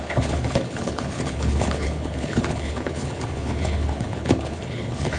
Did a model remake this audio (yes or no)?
yes